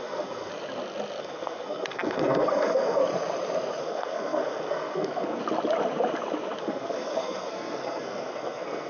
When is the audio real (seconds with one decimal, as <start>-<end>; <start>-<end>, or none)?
0.5-1.2; 3.0-3.8; 5.4-6.6